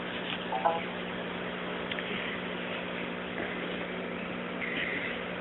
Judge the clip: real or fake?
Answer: real